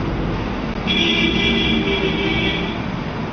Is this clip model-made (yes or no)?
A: no